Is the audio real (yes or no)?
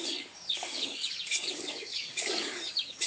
no